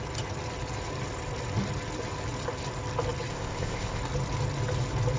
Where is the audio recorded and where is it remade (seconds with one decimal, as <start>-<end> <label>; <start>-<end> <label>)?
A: 0.0-3.3 recorded; 3.3-4.0 remade; 4.0-5.2 recorded